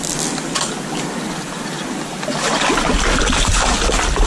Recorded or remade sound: recorded